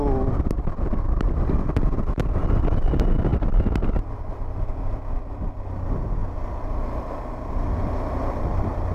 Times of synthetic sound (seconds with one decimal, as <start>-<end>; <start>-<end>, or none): none